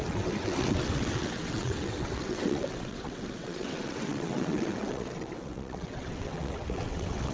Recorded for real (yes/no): no